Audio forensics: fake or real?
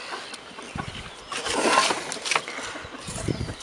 real